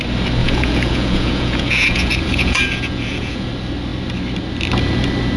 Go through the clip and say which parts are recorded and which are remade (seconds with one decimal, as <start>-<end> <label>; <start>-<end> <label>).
0.0-0.4 recorded; 0.4-3.5 remade; 3.5-5.4 recorded